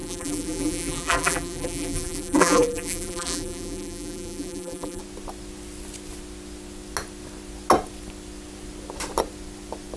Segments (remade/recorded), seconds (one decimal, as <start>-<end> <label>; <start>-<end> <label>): 0.0-5.0 remade; 5.0-10.0 recorded